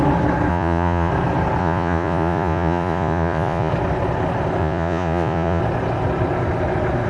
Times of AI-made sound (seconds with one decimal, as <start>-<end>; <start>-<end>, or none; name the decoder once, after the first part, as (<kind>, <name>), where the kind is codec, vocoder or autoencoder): 0.5-1.1 (vocoder, Vocos); 1.6-3.7; 4.6-5.6